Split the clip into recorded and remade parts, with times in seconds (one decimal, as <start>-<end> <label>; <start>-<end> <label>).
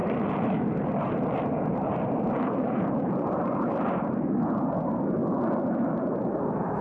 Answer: 0.0-4.1 remade; 4.1-5.2 recorded; 5.2-6.8 remade